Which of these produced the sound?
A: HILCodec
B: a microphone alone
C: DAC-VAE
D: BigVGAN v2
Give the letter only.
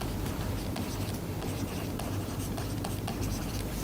D